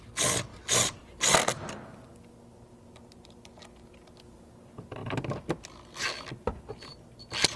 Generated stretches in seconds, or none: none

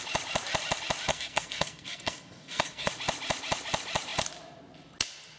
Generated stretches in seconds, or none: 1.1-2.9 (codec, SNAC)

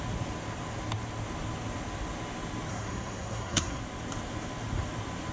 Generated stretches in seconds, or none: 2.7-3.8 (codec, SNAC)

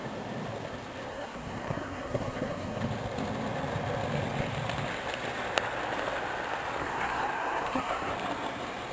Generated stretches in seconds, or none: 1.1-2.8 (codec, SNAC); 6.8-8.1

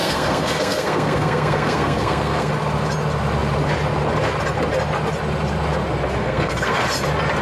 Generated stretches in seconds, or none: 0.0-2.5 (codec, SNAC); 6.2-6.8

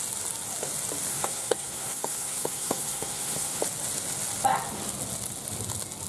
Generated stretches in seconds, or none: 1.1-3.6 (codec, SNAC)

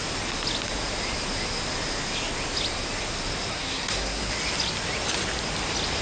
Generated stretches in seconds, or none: 3.5-4.3 (codec, SNAC)